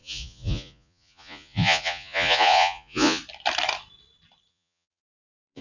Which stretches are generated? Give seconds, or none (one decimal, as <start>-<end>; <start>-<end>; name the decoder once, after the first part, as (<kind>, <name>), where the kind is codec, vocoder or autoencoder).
0.0-3.2 (vocoder, Vocos); 4.5-5.6